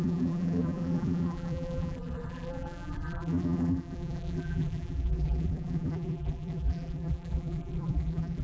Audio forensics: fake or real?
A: fake